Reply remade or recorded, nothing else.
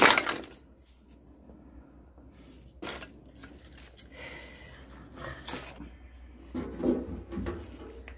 recorded